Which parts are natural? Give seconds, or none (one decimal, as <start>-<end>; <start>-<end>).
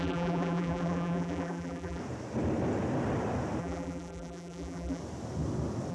2.0-3.6; 5.0-5.9